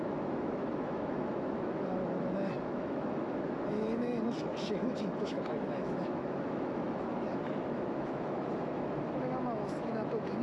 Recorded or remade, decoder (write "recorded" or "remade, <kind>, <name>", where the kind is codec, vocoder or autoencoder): remade, autoencoder, DAC-VAE